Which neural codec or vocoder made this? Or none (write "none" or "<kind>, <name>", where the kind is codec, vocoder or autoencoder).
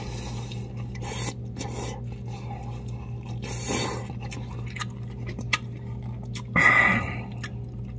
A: none